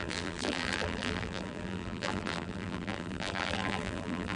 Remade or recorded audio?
remade